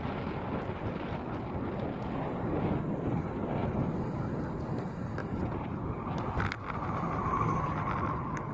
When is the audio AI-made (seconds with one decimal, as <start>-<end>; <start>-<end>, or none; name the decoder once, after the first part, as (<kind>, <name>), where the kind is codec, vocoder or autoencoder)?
5.2-6.1 (vocoder, BigVGAN v2)

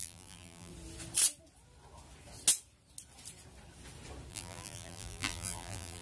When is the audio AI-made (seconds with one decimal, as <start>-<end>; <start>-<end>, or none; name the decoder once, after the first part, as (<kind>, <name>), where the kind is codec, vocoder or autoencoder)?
0.0-0.7 (vocoder, BigVGAN v2); 4.3-6.0